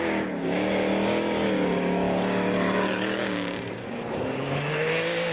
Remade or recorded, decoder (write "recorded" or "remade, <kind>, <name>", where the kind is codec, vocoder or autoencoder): remade, codec, DAC